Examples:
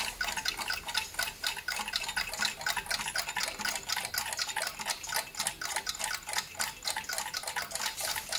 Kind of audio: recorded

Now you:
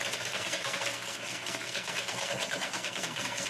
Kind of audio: remade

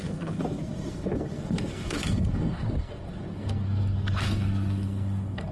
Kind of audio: remade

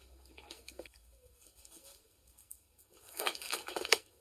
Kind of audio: remade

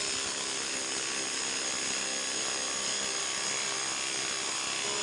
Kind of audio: recorded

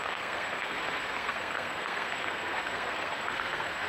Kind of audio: remade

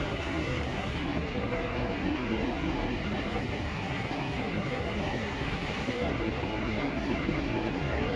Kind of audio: remade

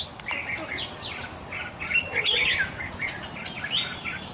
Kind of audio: recorded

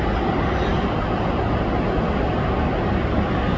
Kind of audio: recorded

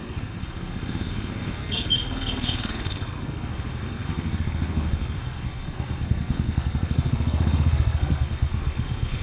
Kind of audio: remade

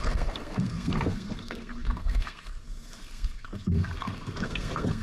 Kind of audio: remade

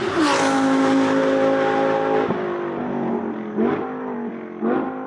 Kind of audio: recorded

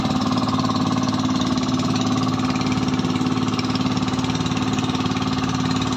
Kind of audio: recorded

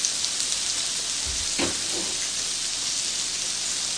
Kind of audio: recorded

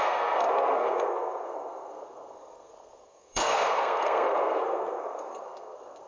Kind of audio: remade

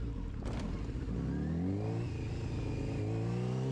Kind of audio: recorded